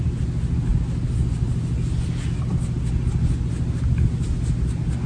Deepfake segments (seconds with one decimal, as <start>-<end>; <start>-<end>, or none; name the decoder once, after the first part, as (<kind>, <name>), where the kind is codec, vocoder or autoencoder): none